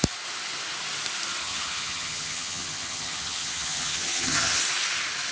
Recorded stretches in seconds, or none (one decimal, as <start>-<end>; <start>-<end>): 0.0-1.4; 4.6-5.3